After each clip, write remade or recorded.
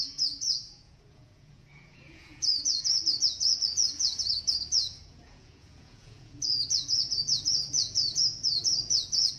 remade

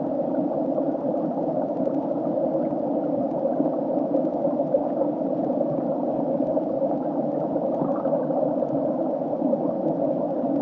recorded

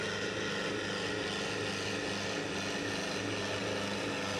recorded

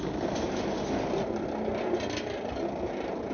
recorded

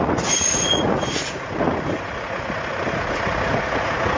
remade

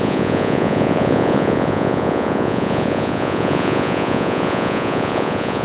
remade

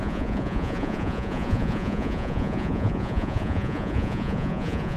remade